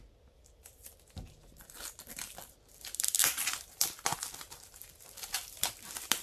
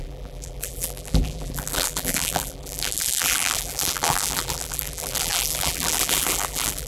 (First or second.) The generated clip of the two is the second